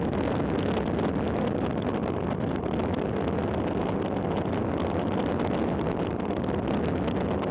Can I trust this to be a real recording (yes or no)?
yes